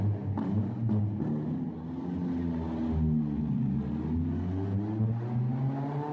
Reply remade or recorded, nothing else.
recorded